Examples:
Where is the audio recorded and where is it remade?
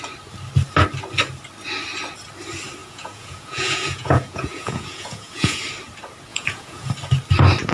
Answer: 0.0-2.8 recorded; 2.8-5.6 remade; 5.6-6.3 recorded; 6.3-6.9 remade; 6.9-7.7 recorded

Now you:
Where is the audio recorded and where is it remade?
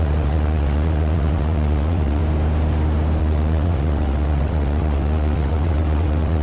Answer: 0.0-2.2 remade; 2.2-3.2 recorded; 3.2-6.4 remade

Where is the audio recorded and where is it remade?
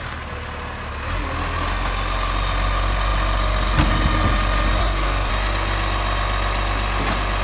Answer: 0.0-4.8 recorded; 4.8-5.3 remade; 5.3-7.4 recorded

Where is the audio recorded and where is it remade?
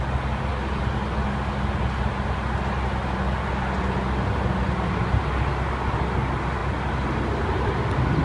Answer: 0.0-8.2 recorded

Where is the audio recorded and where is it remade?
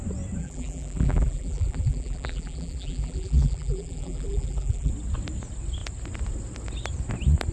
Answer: 0.0-0.4 recorded; 0.4-4.9 remade; 4.9-7.5 recorded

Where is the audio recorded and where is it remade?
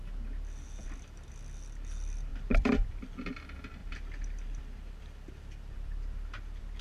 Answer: 0.0-2.3 recorded; 2.3-3.3 remade; 3.3-3.8 recorded; 3.8-6.8 remade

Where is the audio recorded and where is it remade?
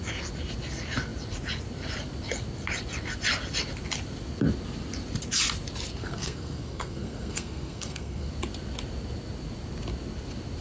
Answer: 0.0-6.0 recorded; 6.0-8.3 remade; 8.3-10.6 recorded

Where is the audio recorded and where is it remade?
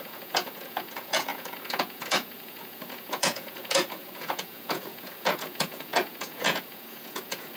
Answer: 0.0-7.6 remade